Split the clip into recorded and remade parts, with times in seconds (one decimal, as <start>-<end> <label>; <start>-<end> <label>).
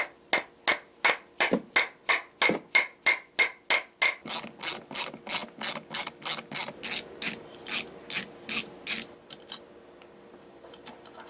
0.0-11.3 recorded